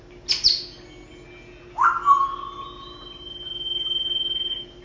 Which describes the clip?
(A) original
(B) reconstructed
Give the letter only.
A